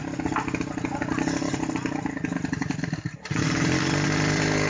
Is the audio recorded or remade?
recorded